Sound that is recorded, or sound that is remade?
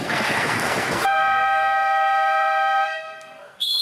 remade